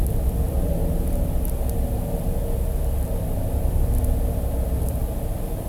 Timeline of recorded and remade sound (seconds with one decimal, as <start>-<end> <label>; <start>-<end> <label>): 0.0-0.8 remade; 0.8-3.6 recorded; 3.6-5.7 remade